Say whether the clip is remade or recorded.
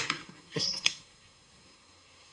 remade